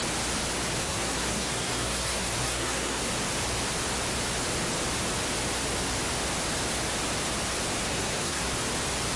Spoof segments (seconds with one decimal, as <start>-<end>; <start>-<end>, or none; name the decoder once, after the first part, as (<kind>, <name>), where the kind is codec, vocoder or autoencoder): 0.8-3.0 (codec, SNAC); 7.9-8.5